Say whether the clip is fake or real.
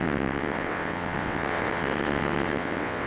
fake